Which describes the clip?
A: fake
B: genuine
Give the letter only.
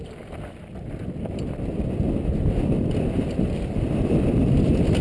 A